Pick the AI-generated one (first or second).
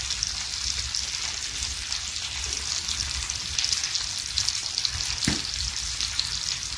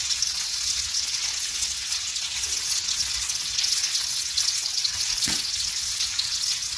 second